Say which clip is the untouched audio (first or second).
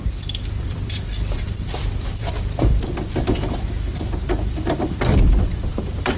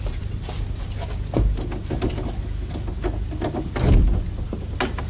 second